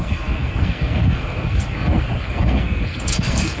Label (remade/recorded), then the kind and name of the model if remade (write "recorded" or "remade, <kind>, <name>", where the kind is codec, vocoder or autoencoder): remade, codec, SNAC